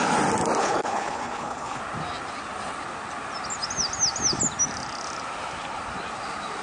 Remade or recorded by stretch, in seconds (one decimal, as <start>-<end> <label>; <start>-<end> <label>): 0.0-0.6 recorded; 0.6-1.8 remade; 1.8-6.6 recorded